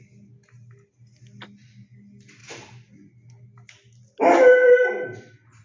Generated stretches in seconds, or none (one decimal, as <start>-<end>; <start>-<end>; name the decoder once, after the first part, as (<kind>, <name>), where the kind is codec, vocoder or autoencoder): 0.0-2.4 (vocoder, BigVGAN v2)